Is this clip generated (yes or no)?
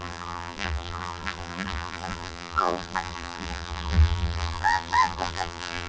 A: yes